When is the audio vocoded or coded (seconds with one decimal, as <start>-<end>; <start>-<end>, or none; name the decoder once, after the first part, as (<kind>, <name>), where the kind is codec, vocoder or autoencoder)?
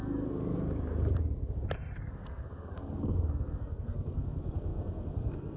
0.0-0.4 (codec, SNAC); 2.1-5.6